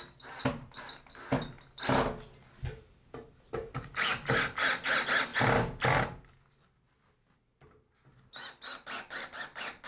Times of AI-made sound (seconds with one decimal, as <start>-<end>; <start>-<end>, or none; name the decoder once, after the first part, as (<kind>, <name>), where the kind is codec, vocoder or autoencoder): none